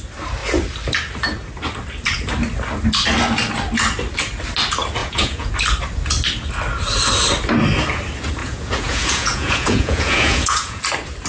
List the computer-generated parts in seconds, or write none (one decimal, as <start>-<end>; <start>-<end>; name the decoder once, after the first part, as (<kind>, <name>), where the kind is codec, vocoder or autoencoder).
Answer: 5.0-5.5 (vocoder, Vocos); 8.4-10.8